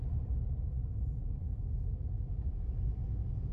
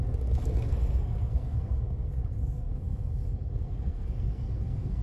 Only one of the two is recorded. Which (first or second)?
first